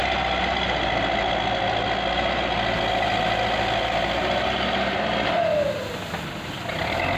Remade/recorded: recorded